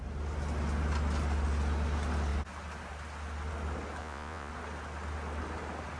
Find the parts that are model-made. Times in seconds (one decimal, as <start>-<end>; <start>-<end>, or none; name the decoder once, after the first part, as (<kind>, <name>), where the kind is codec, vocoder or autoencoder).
4.0-4.5 (vocoder, Vocos)